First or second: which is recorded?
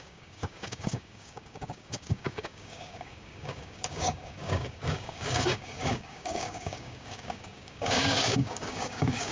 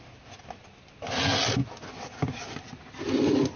second